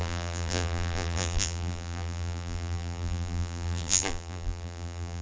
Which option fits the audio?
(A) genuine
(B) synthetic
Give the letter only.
B